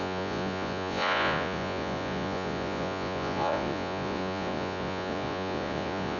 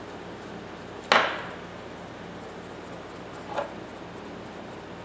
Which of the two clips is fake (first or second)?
first